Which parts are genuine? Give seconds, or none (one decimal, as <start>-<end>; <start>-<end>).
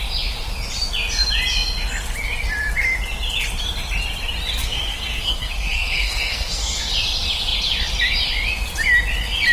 0.0-4.6; 6.9-9.5